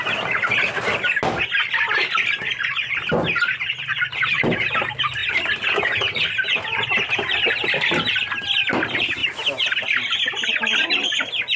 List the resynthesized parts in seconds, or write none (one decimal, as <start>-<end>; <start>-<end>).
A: none